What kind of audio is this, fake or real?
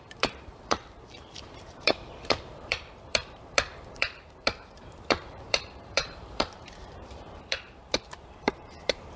fake